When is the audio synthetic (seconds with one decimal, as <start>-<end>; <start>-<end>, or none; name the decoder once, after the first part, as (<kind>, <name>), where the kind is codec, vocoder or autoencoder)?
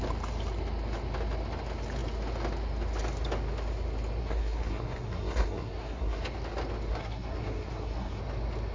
4.2-6.2 (codec, SNAC); 6.9-8.2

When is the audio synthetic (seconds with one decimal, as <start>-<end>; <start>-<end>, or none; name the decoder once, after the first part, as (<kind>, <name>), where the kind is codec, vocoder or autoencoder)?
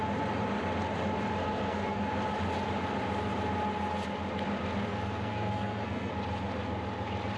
1.4-2.0 (codec, SNAC); 4.9-6.1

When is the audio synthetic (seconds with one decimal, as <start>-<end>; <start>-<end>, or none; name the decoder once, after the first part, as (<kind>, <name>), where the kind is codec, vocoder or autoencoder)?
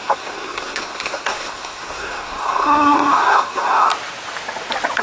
0.0-3.9 (codec, SNAC)